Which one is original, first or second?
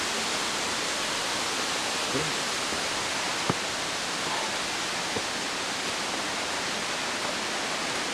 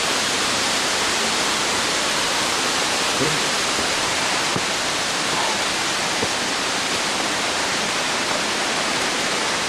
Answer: first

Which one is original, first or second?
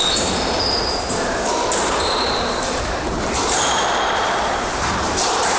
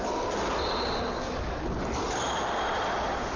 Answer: second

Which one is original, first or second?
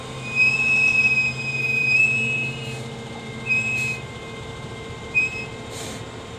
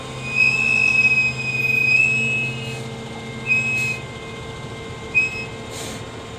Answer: second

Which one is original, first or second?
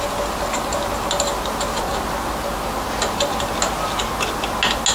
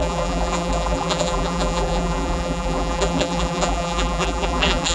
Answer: first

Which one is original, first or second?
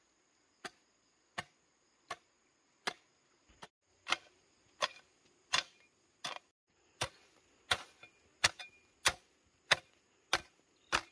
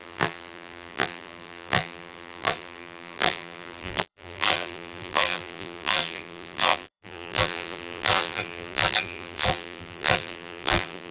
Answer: first